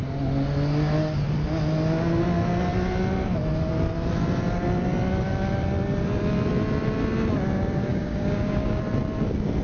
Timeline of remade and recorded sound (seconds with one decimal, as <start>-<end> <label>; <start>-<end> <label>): 0.0-7.9 recorded; 7.9-8.8 remade; 8.8-9.6 recorded